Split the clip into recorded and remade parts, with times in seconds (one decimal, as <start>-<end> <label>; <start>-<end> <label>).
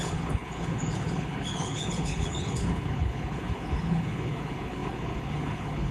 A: 0.0-5.9 remade